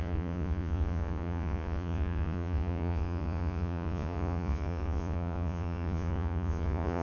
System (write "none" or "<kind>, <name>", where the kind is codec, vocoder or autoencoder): vocoder, Vocos